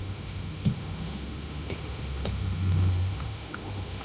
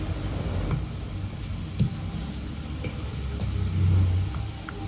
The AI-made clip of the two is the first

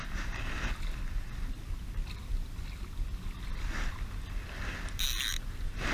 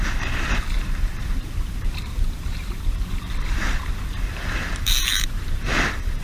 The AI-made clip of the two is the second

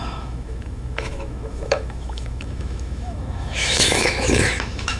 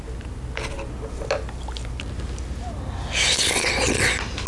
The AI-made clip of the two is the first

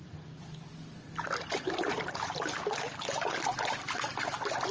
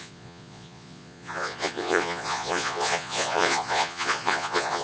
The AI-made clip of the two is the second